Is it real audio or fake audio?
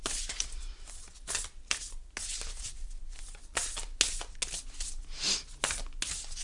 real